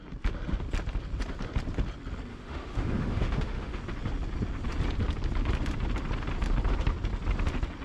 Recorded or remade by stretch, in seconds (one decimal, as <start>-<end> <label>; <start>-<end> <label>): 0.0-2.3 recorded; 2.3-3.8 remade; 3.8-7.8 recorded